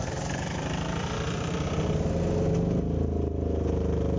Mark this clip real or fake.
real